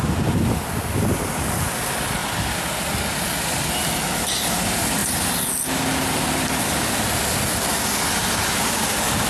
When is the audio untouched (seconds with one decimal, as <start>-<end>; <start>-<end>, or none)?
0.0-9.3